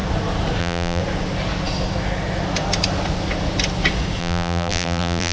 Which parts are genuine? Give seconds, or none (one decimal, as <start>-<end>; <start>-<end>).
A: 0.0-0.6; 1.0-4.2